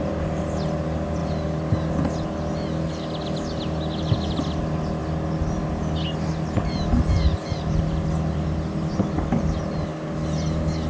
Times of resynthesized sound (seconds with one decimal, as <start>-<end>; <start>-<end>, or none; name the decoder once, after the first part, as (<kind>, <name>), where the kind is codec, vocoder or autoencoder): none